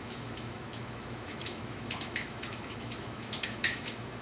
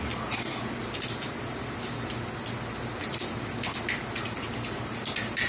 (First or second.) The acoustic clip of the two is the second